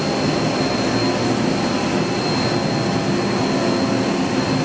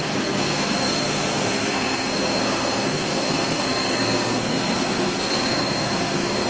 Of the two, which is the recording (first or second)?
first